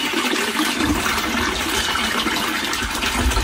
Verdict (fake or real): real